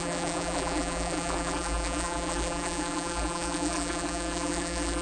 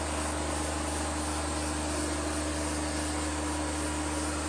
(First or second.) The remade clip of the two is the first